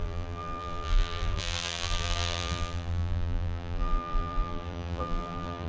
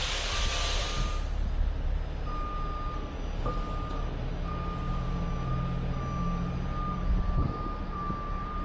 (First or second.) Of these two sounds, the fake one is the first